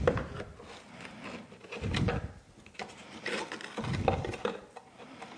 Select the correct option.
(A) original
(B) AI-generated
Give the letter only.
B